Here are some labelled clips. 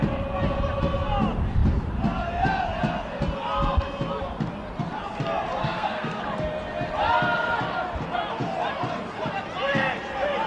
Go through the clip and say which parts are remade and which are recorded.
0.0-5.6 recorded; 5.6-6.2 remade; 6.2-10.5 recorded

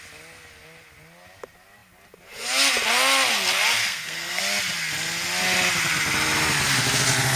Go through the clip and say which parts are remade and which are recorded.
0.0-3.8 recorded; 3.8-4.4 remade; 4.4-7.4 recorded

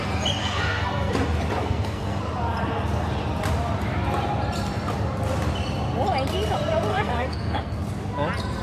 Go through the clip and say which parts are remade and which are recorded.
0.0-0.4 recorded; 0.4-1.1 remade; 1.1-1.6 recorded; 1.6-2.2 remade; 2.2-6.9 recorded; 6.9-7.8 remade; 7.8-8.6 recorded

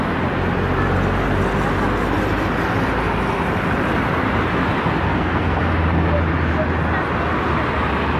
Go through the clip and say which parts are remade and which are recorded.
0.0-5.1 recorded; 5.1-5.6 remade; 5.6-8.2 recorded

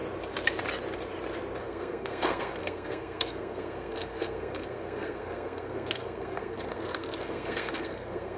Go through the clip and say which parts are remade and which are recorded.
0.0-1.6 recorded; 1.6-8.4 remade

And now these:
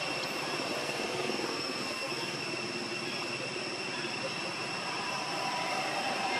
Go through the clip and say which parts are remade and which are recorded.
0.0-0.8 recorded; 0.8-2.4 remade; 2.4-6.4 recorded

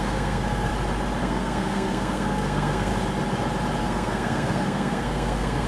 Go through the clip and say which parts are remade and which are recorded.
0.0-0.7 remade; 0.7-1.2 recorded; 1.2-2.9 remade; 2.9-3.8 recorded; 3.8-5.7 remade

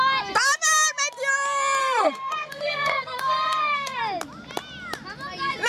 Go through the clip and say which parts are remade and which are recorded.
0.0-1.8 recorded; 1.8-4.0 remade; 4.0-5.7 recorded